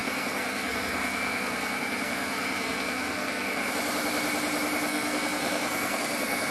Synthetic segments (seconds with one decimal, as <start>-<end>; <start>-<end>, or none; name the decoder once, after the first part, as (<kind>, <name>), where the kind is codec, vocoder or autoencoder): 0.0-3.7 (codec, SNAC); 4.9-6.5